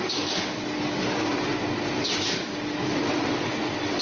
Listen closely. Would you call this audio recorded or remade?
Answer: recorded